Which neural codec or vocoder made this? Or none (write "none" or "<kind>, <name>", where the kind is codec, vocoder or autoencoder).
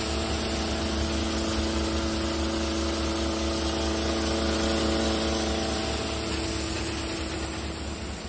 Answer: none